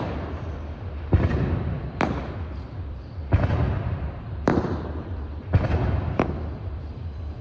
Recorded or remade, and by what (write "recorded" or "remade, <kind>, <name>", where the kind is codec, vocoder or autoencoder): remade, vocoder, BigVGAN v2